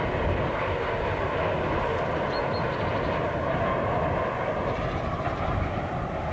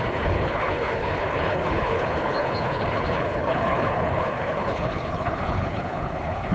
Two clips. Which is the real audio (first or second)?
first